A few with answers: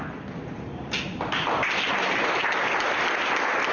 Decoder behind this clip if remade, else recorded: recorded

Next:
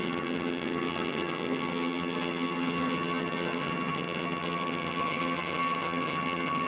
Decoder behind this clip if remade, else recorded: remade, vocoder, HiFi-GAN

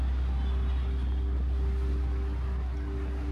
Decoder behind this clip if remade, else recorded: recorded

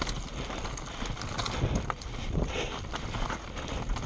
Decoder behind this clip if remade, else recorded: recorded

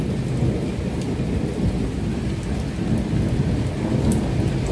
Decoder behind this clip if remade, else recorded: recorded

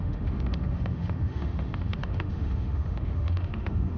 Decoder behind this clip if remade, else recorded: remade, autoencoder, DAC-VAE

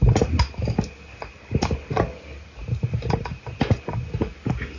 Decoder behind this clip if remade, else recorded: recorded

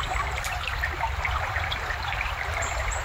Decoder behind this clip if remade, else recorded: remade, vocoder, BigVGAN v2